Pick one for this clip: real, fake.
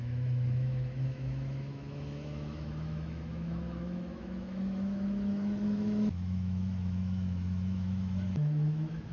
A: fake